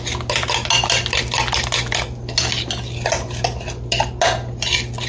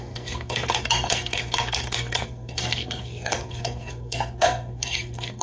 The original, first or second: first